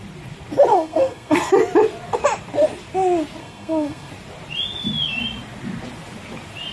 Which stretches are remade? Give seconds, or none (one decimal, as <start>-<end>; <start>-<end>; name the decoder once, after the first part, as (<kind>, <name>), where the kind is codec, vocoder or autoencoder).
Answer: 0.7-1.5 (codec, SNAC); 3.4-4.1